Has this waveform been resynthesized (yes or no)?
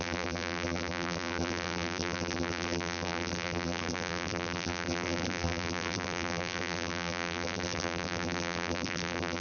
yes